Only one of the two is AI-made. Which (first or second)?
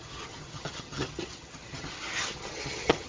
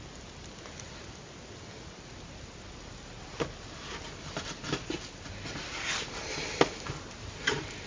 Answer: first